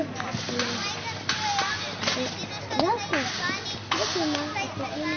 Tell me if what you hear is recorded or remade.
recorded